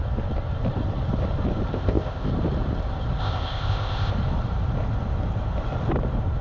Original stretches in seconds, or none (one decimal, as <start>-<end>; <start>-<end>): 0.0-1.7; 2.3-3.2; 4.1-6.4